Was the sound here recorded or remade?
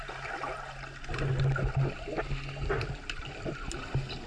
recorded